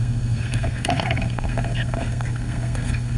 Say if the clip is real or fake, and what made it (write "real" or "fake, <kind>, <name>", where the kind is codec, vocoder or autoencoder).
fake, codec, SNAC